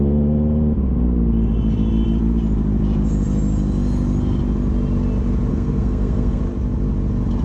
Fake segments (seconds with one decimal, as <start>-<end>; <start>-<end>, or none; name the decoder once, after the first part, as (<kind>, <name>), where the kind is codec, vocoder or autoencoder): 5.5-6.4 (codec, SNAC)